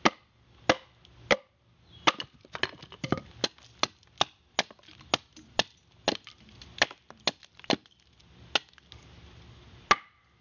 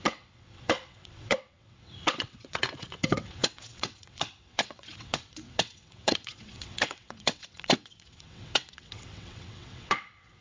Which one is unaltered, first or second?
first